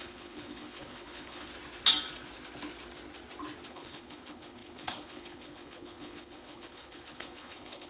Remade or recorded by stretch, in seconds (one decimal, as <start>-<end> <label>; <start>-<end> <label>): 0.0-1.5 remade; 1.5-3.7 recorded; 3.7-7.9 remade